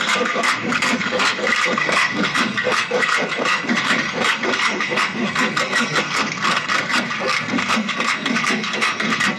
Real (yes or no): no